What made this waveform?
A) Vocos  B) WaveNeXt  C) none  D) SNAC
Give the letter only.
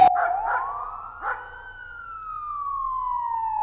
C